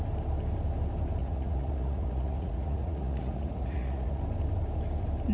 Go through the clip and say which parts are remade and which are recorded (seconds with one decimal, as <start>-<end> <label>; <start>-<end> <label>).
0.0-1.2 recorded; 1.2-4.2 remade; 4.2-5.3 recorded